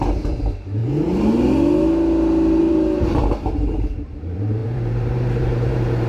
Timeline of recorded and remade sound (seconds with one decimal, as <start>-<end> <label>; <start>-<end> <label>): 0.0-0.8 remade; 0.8-2.6 recorded; 2.6-6.1 remade